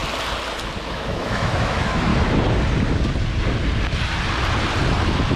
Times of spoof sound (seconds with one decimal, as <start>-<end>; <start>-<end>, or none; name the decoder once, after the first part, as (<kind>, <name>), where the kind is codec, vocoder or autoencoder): 0.9-2.1 (autoencoder, DAC-VAE)